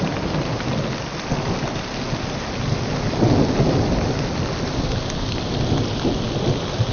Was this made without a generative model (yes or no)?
yes